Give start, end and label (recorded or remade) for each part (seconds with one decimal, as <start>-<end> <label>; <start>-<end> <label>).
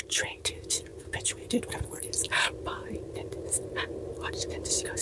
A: 0.0-5.0 recorded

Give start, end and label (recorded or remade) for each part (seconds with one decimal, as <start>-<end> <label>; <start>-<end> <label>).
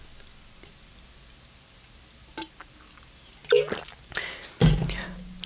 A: 0.0-5.5 recorded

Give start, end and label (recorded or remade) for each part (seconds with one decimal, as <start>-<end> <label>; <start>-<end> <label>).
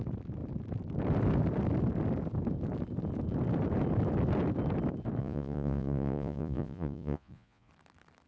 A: 0.0-5.2 recorded; 5.2-7.7 remade; 7.7-8.3 recorded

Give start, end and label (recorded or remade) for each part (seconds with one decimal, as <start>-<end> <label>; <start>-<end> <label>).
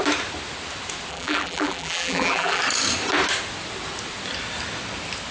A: 0.0-1.1 recorded; 1.1-2.6 remade; 2.6-5.3 recorded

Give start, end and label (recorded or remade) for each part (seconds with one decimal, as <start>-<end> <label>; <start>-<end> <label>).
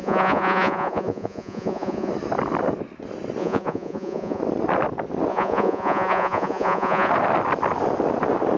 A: 0.0-2.1 remade; 2.1-3.4 recorded; 3.4-4.4 remade; 4.4-5.3 recorded; 5.3-7.1 remade; 7.1-8.6 recorded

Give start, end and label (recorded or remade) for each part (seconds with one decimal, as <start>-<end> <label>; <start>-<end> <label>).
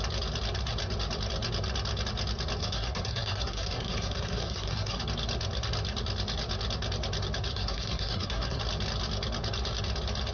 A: 0.0-2.6 recorded; 2.6-5.0 remade; 5.0-7.5 recorded; 7.5-8.6 remade; 8.6-10.3 recorded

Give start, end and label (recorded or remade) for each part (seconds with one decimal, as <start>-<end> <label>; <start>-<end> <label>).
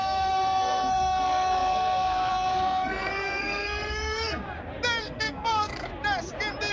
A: 0.0-4.4 remade; 4.4-5.0 recorded; 5.0-5.9 remade; 5.9-6.7 recorded